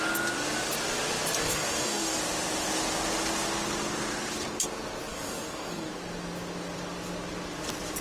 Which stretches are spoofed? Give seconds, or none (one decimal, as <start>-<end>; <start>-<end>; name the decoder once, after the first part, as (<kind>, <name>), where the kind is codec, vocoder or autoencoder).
1.4-2.2 (codec, DAC); 5.1-5.9